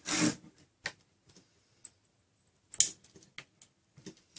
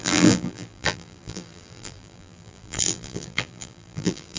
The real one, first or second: first